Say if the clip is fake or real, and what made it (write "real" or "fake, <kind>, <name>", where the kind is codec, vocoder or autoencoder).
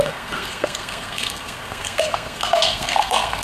fake, codec, SNAC